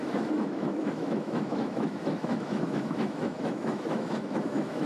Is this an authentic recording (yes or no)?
no